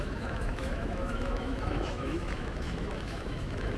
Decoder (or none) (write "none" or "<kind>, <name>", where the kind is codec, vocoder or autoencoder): autoencoder, DAC-VAE